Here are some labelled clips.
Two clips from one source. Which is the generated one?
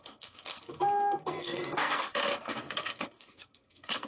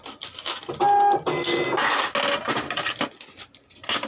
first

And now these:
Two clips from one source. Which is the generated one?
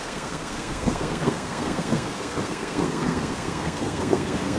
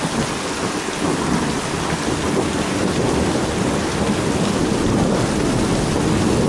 first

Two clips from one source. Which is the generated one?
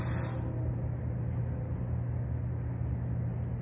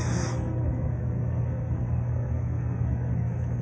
second